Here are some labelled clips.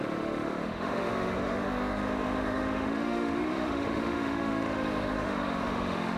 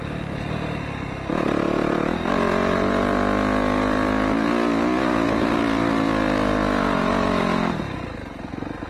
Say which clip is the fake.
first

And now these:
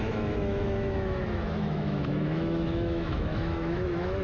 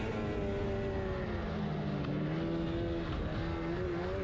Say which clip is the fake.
first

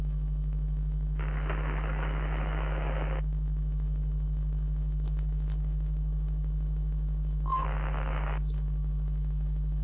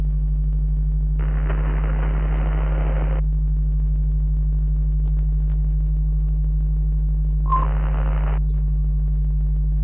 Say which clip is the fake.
first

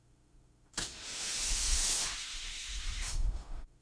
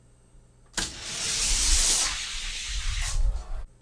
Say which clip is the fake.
first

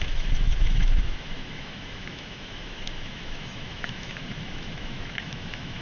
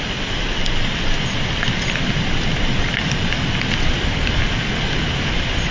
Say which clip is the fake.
first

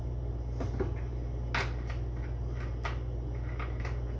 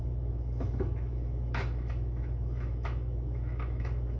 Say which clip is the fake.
second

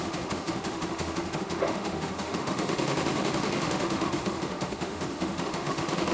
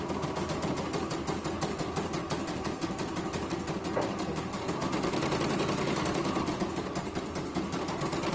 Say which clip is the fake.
first